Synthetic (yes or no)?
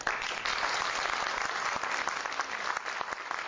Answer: no